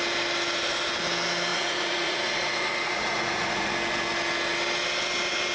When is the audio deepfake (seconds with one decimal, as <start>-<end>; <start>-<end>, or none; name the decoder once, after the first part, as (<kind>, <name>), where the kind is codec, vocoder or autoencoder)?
1.5-3.7 (vocoder, Vocos)